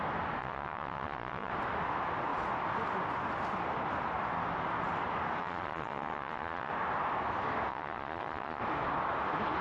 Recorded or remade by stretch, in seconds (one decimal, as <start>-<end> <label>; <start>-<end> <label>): 0.0-0.4 recorded; 0.4-1.5 remade; 1.5-5.4 recorded; 5.4-6.7 remade; 6.7-7.7 recorded; 7.7-8.6 remade; 8.6-9.6 recorded